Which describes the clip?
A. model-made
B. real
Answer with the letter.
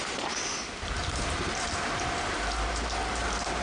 A